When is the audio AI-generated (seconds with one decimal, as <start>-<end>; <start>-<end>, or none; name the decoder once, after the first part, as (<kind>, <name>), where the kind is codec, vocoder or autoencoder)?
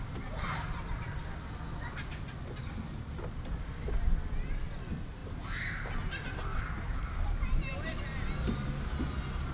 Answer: none